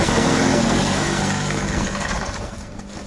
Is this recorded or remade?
remade